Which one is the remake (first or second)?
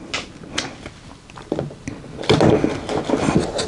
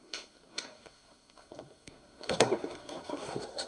second